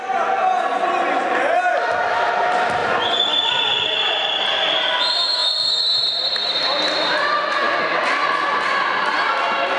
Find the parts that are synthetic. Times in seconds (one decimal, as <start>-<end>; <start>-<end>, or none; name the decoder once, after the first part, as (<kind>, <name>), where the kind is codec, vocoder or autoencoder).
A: 2.8-3.5 (vocoder, Vocos)